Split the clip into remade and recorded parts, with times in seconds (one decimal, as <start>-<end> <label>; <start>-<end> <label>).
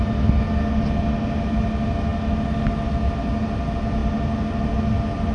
0.0-5.3 recorded